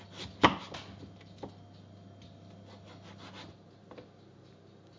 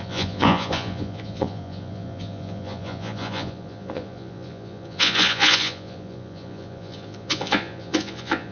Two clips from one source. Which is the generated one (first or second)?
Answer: second